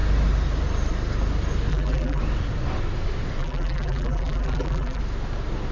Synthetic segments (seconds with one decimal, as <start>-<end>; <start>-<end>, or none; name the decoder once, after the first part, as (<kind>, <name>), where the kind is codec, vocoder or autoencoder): 1.7-2.2 (vocoder, BigVGAN v2); 3.4-5.0